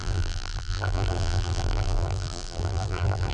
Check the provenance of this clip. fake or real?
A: fake